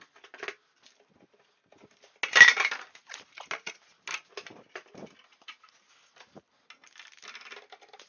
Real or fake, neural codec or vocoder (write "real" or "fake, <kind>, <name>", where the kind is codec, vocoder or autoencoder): real